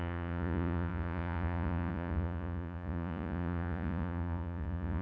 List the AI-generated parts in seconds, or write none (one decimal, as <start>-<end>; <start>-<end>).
0.0-5.0